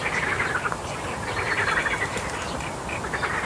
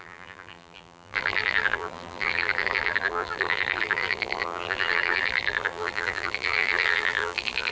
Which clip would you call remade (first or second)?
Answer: second